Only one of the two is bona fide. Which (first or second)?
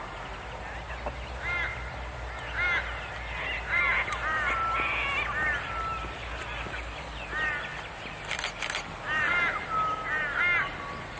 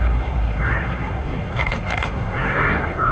first